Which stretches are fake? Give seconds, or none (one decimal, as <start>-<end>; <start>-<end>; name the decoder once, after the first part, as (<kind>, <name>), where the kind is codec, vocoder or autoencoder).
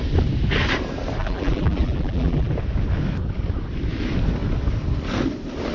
1.2-2.5 (vocoder, BigVGAN v2)